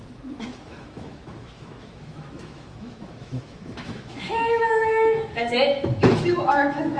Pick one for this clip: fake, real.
fake